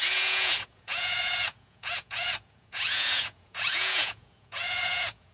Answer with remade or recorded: remade